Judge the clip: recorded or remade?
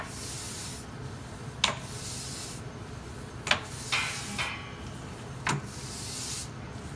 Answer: recorded